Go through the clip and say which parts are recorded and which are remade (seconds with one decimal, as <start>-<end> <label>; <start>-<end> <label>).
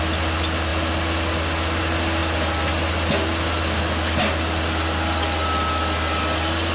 0.0-6.7 recorded